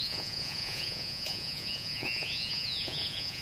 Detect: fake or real fake